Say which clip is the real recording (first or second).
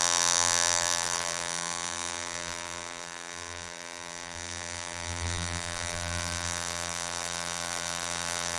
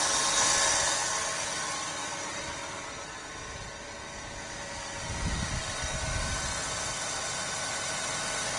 second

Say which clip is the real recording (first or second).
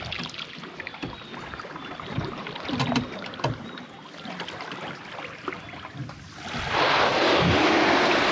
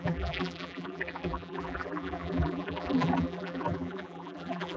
first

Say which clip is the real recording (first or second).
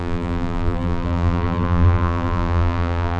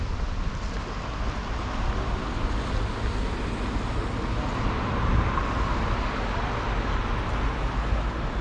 second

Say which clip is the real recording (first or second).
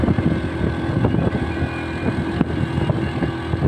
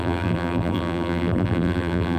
first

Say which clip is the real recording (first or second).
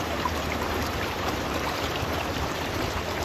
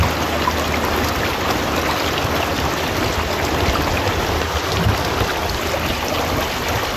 second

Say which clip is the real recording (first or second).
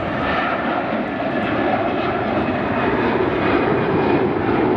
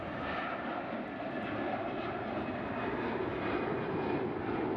second